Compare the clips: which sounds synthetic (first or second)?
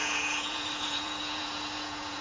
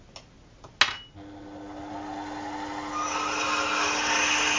first